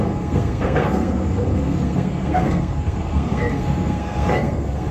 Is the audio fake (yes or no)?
yes